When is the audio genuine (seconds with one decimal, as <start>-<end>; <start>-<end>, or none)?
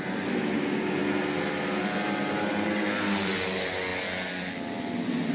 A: 0.0-5.3